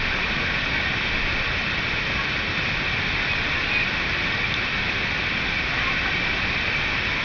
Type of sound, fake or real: real